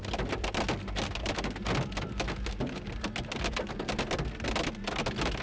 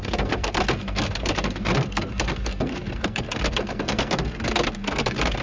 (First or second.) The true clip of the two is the first